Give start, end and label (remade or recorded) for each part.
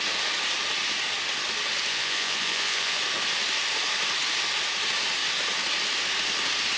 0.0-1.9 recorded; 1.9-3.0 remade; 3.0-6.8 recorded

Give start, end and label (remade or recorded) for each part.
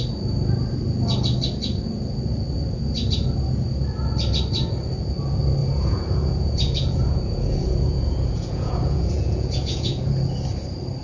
0.0-5.6 recorded; 5.6-10.1 remade; 10.1-11.0 recorded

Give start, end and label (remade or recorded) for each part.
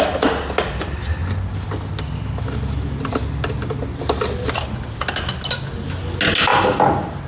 0.0-7.3 recorded